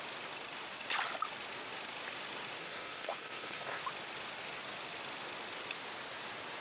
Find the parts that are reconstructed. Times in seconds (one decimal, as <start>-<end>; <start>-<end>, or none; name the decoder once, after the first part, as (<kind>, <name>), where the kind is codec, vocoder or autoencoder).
2.6-3.8 (codec, SNAC)